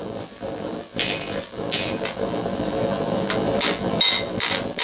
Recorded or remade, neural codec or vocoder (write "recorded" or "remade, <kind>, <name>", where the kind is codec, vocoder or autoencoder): remade, vocoder, BigVGAN v2